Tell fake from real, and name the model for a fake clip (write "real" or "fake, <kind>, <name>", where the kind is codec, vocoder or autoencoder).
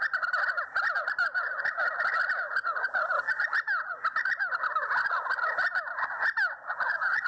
real